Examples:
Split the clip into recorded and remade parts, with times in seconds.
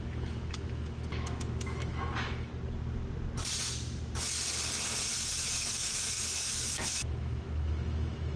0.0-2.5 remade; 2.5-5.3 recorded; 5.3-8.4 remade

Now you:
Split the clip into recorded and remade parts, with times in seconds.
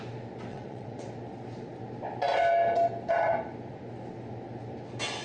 0.0-0.5 recorded; 0.5-1.1 remade; 1.1-5.2 recorded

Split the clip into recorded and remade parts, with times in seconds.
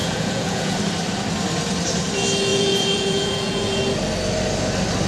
0.0-0.8 remade; 0.8-2.5 recorded; 2.5-3.8 remade; 3.8-5.1 recorded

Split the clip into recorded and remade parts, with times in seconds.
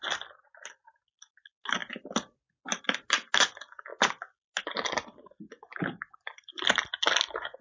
0.0-7.6 recorded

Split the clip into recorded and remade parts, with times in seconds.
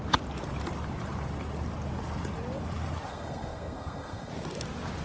0.0-3.1 recorded; 3.1-4.3 remade; 4.3-5.0 recorded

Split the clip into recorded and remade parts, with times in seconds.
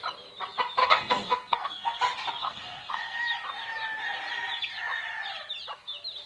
0.0-0.8 recorded; 0.8-2.0 remade; 2.0-2.4 recorded; 2.4-3.2 remade; 3.2-6.3 recorded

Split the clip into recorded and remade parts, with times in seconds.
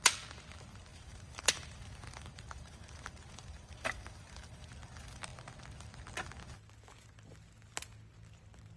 0.0-0.9 recorded; 0.9-4.7 remade; 4.7-8.8 recorded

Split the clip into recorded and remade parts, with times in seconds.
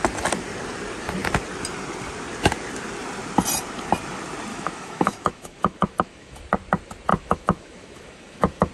0.0-4.5 recorded; 4.5-6.4 remade; 6.4-7.1 recorded; 7.1-8.7 remade